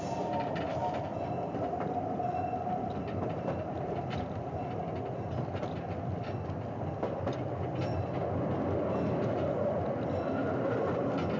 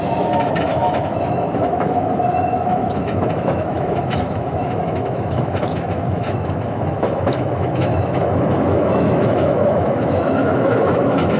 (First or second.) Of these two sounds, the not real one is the second